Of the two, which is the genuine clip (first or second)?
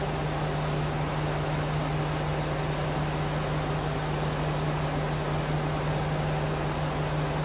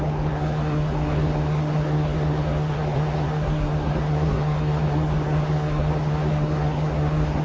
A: first